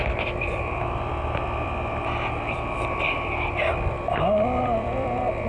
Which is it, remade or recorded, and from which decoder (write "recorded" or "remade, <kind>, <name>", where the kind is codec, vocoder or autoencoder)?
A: remade, vocoder, BigVGAN v2